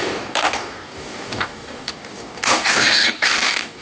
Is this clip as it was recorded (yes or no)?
no